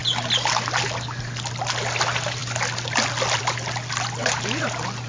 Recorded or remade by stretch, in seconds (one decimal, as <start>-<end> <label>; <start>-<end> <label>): 0.0-5.1 recorded